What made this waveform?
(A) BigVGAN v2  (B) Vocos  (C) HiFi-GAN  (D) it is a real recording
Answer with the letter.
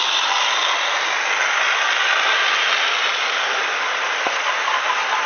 A